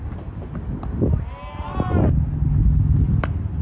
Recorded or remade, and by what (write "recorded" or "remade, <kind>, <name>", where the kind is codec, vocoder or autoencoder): recorded